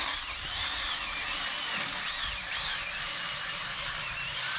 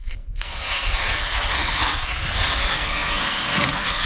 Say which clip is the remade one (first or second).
second